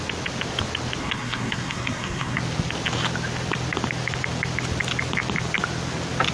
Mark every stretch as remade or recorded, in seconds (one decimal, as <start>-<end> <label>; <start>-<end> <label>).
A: 0.0-1.0 recorded; 1.0-2.4 remade; 2.4-6.3 recorded